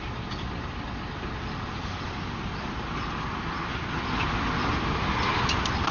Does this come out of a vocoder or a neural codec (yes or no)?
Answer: no